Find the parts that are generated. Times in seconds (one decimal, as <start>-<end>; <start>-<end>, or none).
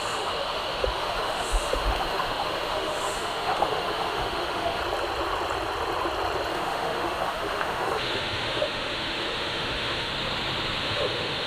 0.0-4.8; 6.5-10.1; 10.8-11.5